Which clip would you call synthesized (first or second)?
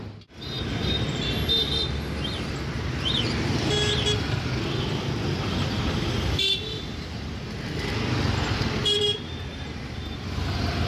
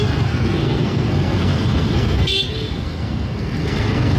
second